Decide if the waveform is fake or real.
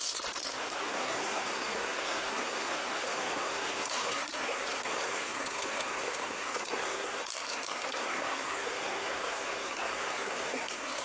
fake